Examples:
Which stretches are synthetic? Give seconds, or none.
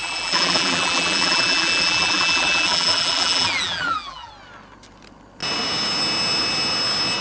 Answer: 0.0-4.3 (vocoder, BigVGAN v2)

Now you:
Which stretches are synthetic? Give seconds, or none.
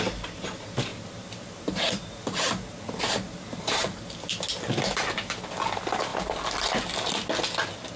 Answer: 0.9-4.0 (vocoder, BigVGAN v2)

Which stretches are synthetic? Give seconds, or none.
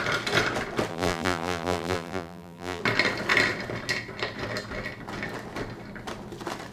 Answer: 0.9-2.8 (vocoder, BigVGAN v2)